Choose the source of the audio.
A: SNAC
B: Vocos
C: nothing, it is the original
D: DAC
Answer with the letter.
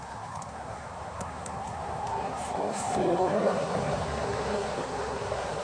A